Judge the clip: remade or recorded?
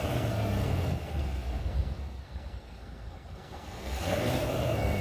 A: remade